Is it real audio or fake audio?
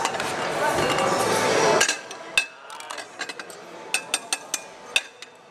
real